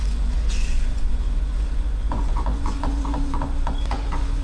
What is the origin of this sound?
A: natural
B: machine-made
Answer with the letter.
B